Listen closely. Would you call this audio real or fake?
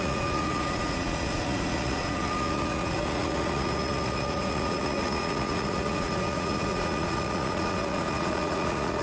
fake